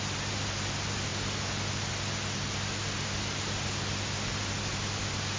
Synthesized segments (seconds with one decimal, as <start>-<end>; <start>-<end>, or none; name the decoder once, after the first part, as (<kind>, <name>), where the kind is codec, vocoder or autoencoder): 0.0-1.1 (vocoder, BigVGAN v2); 4.3-5.4